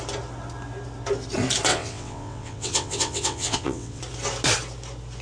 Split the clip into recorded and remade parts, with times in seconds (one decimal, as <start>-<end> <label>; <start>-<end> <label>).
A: 0.0-1.7 recorded; 1.7-4.0 remade; 4.0-5.2 recorded